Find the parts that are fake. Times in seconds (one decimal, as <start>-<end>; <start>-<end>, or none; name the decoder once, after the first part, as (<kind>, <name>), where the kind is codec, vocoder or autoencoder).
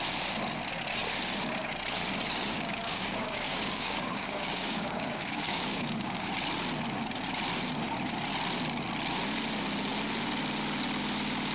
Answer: 2.4-6.3 (codec, DAC)